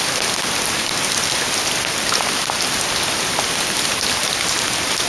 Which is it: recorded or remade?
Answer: recorded